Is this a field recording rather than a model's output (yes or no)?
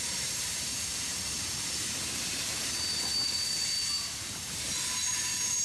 no